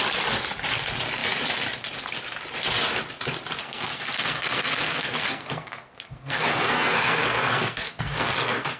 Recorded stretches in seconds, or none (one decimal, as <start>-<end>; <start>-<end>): 0.0-3.6